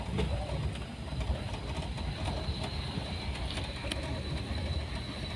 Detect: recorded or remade recorded